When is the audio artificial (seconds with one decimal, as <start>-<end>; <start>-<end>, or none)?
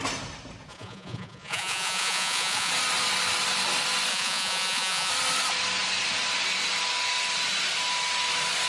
0.7-2.7; 4.1-5.1